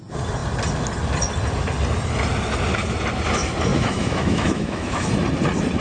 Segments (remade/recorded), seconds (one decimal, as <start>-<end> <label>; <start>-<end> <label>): 0.0-3.7 recorded; 3.7-5.1 remade; 5.1-5.8 recorded